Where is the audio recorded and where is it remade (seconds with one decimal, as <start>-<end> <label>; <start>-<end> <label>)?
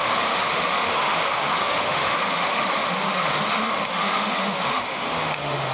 0.0-5.7 remade